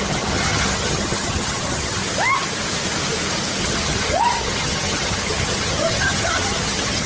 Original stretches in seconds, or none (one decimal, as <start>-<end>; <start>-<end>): 2.0-3.6